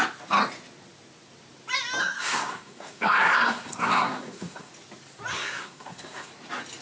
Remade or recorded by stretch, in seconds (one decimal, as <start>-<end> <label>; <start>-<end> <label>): 0.0-2.0 recorded; 2.0-4.7 remade; 4.7-5.3 recorded; 5.3-6.3 remade; 6.3-6.8 recorded